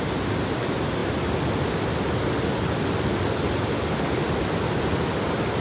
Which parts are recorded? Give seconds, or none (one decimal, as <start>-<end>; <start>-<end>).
0.0-5.6